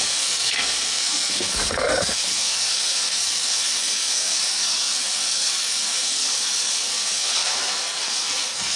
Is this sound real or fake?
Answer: fake